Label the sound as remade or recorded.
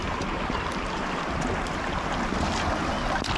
recorded